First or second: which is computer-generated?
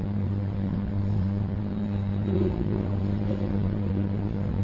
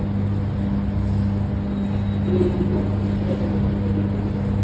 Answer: first